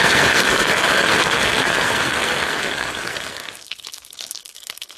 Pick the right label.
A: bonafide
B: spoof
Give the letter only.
B